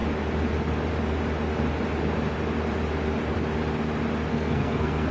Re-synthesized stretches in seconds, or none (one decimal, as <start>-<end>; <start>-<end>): 4.3-5.1